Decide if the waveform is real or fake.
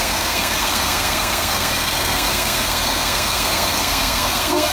fake